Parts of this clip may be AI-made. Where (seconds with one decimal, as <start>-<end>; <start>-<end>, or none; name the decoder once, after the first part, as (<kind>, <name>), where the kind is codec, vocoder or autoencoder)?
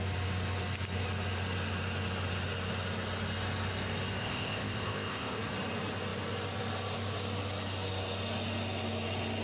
4.2-5.4 (codec, ZipCodec)